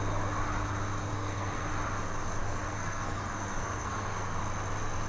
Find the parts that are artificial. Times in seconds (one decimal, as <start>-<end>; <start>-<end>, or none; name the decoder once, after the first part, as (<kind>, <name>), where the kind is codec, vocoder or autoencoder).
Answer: 1.1-1.7 (codec, SNAC); 2.4-4.4